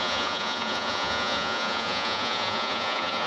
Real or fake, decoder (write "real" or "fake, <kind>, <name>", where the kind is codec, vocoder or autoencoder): fake, vocoder, Vocos